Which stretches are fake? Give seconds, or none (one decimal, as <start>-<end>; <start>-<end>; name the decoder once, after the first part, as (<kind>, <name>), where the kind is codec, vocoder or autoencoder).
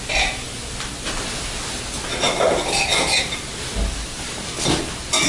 none